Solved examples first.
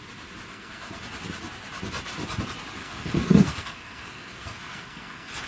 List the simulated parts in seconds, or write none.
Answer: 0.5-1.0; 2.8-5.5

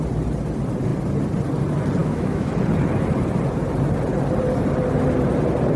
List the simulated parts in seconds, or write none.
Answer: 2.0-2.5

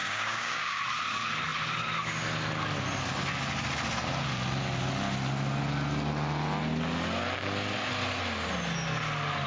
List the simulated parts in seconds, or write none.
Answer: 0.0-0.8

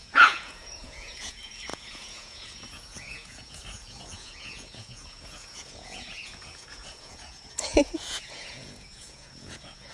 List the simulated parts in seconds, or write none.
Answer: 0.0-9.9

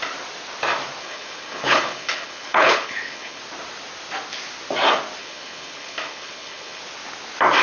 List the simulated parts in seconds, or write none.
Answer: 1.0-3.4; 5.2-6.8